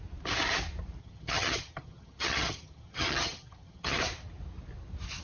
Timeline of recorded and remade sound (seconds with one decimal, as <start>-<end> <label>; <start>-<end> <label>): 0.0-1.0 recorded; 1.0-4.0 remade; 4.0-5.2 recorded